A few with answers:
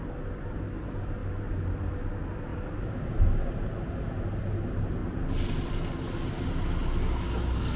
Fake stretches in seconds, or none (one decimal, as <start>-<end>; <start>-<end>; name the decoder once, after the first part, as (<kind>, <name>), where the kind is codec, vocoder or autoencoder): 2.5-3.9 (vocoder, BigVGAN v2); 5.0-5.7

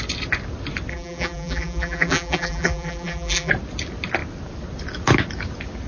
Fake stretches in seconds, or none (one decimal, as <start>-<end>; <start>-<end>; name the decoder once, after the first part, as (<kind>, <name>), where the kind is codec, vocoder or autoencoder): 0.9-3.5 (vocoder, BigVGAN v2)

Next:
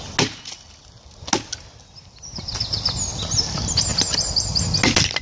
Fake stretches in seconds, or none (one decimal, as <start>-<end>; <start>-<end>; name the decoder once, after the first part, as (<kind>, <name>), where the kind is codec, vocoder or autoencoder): 3.9-4.6 (vocoder, BigVGAN v2)

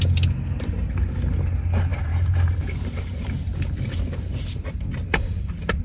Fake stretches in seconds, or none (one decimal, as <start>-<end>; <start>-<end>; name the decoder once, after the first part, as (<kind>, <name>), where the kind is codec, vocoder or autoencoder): 1.9-4.2 (vocoder, BigVGAN v2)

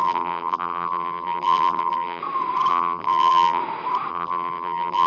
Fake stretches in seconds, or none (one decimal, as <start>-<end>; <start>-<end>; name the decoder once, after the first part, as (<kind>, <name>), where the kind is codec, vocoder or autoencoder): 0.0-2.2 (vocoder, BigVGAN v2); 2.7-3.6; 4.1-5.1